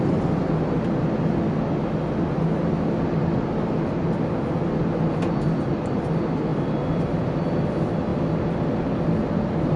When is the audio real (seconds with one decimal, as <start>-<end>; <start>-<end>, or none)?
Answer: 0.0-9.8